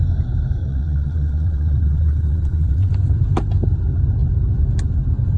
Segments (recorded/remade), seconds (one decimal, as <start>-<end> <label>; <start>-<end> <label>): 0.0-0.6 recorded; 0.6-2.9 remade; 2.9-5.4 recorded